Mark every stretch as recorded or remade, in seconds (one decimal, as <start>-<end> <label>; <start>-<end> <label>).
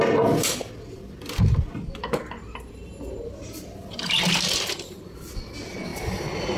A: 0.0-6.6 recorded